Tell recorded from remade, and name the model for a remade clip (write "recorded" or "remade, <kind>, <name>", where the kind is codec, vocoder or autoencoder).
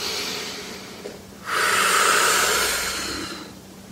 recorded